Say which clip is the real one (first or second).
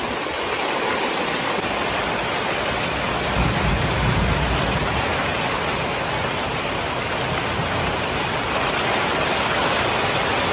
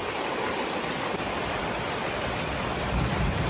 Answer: first